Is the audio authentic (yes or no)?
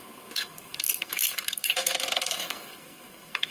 no